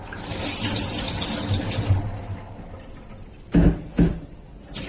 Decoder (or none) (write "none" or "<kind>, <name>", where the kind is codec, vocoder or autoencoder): none